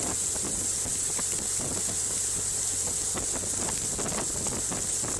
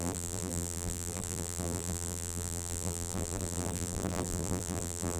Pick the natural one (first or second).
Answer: first